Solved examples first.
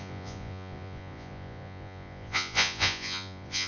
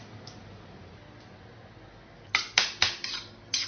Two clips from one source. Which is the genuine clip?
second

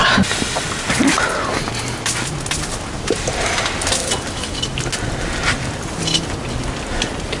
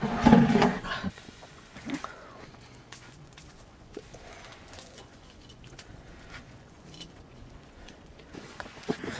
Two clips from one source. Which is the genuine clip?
first